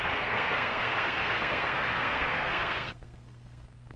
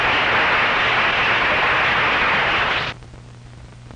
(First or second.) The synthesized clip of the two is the first